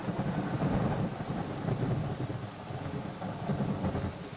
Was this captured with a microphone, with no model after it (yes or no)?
yes